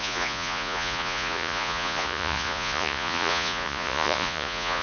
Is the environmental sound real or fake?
fake